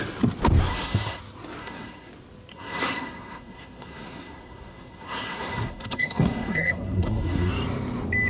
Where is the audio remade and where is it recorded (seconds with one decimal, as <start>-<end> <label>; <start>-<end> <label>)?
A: 0.0-0.7 recorded; 0.7-1.2 remade; 1.2-1.6 recorded; 1.6-2.1 remade; 2.1-2.5 recorded; 2.5-7.5 remade; 7.5-8.3 recorded